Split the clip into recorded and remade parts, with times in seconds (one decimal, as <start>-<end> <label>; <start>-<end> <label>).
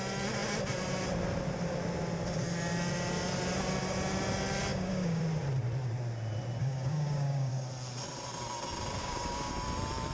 0.0-4.7 recorded; 4.7-5.2 remade; 5.2-6.6 recorded; 6.6-7.5 remade; 7.5-9.0 recorded; 9.0-9.5 remade; 9.5-10.1 recorded